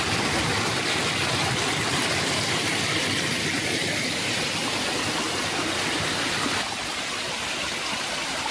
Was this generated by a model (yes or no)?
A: no